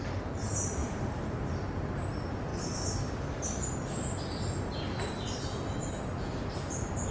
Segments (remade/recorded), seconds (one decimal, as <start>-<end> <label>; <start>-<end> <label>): 0.0-0.8 recorded; 0.8-1.4 remade; 1.4-7.1 recorded

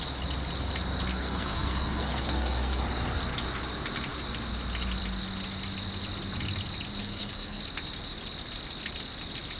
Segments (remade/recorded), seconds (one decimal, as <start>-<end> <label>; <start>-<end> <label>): 0.0-1.1 recorded; 1.1-2.8 remade; 2.8-7.0 recorded; 7.0-7.6 remade; 7.6-9.6 recorded